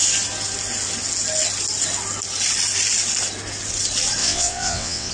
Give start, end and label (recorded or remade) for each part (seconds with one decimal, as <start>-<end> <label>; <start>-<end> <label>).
0.0-4.2 recorded; 4.2-5.1 remade